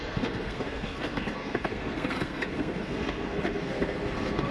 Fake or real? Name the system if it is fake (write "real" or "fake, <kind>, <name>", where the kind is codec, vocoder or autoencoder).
fake, codec, SNAC